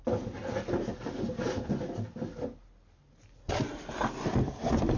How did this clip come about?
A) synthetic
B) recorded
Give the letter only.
B